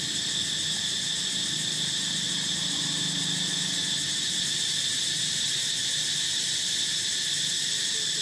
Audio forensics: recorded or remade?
recorded